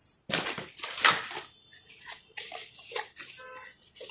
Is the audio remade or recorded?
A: recorded